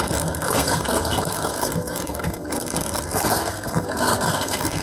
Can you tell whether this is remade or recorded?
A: remade